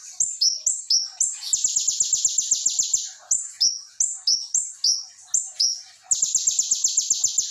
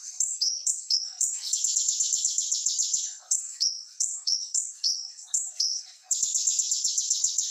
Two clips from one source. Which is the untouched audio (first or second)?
first